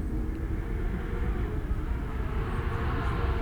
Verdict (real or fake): real